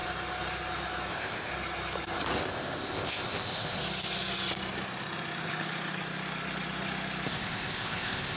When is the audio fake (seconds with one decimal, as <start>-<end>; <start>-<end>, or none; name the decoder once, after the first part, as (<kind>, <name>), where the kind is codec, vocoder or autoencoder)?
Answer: 1.1-1.5 (codec, ZipCodec); 2.4-3.8; 7.3-8.4